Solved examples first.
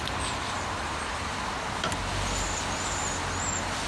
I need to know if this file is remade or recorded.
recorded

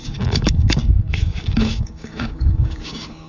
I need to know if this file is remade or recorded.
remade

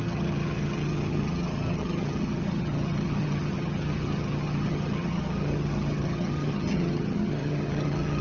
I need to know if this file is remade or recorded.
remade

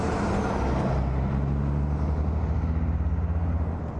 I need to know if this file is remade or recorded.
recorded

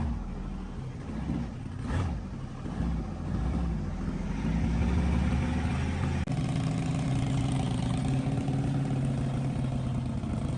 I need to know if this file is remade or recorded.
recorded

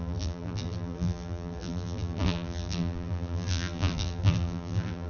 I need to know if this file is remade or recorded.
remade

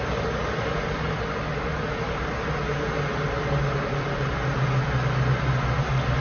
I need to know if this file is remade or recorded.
recorded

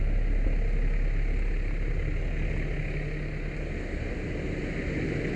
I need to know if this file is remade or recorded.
recorded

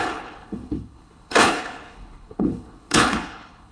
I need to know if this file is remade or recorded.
remade